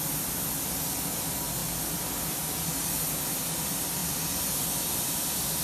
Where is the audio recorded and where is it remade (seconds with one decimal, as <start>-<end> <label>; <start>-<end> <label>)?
0.0-1.6 recorded; 1.6-2.9 remade; 2.9-4.0 recorded; 4.0-4.7 remade; 4.7-5.6 recorded